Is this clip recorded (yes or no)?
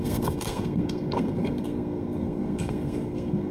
no